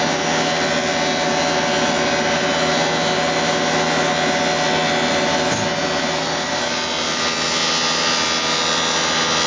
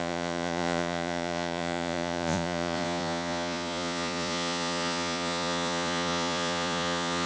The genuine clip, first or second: first